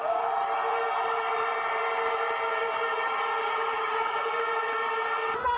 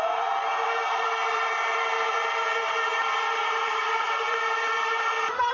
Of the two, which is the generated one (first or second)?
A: second